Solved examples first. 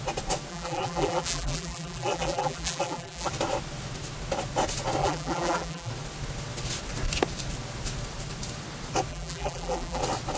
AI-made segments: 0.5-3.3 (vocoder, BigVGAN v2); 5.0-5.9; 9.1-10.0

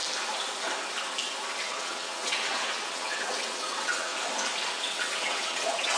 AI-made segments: 1.6-4.1 (vocoder, WaveNeXt); 4.7-6.0